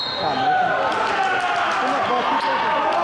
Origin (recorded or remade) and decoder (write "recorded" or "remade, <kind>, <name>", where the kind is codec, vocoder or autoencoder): recorded